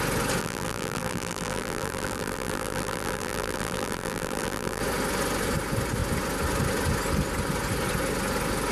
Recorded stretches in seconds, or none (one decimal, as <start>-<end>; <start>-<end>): 0.0-0.4; 4.8-8.7